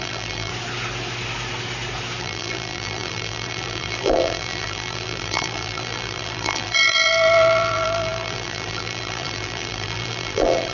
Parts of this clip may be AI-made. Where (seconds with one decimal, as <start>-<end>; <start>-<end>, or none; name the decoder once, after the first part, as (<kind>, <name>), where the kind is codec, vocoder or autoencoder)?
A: 0.0-0.5 (vocoder, BigVGAN v2); 2.2-10.7